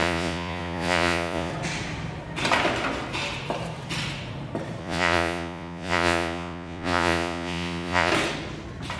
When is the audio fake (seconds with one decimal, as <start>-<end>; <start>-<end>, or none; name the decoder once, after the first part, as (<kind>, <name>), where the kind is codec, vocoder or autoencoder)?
0.0-1.5 (vocoder, Vocos); 4.8-8.1